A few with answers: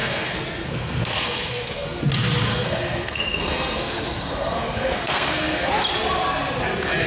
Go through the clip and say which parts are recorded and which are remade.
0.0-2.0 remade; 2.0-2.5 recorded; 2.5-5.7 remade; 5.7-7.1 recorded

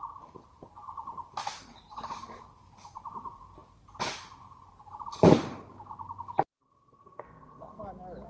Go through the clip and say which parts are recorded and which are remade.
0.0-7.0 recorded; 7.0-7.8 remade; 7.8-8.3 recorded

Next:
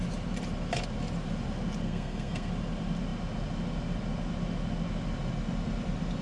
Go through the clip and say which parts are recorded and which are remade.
0.0-1.8 recorded; 1.8-2.5 remade; 2.5-6.2 recorded

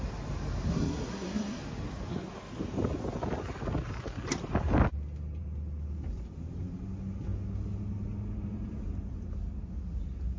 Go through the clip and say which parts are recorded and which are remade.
0.0-0.7 recorded; 0.7-1.6 remade; 1.6-10.4 recorded

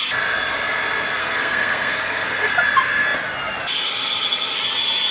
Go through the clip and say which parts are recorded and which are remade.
0.0-1.2 recorded; 1.2-2.5 remade; 2.5-5.1 recorded

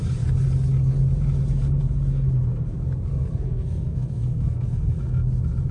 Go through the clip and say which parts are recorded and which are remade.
0.0-3.1 recorded; 3.1-5.0 remade; 5.0-5.7 recorded